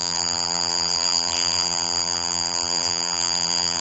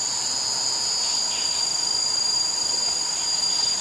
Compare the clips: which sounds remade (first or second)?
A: first